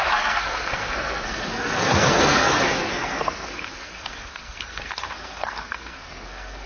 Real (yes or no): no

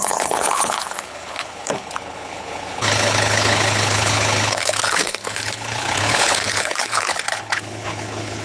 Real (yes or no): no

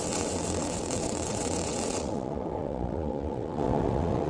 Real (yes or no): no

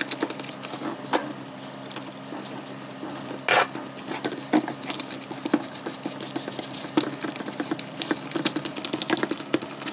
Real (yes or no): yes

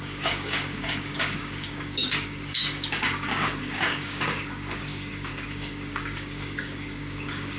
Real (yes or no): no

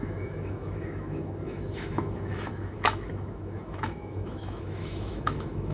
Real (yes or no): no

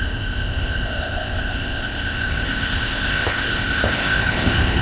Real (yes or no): no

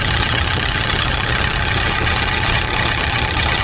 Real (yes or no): no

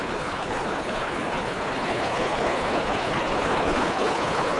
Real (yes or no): no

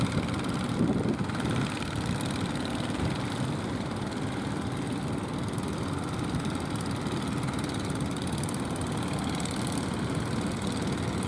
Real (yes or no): yes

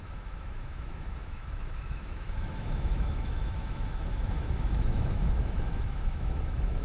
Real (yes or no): no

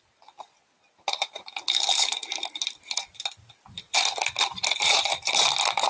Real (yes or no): yes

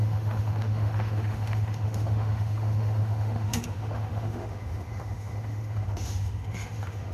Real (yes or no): no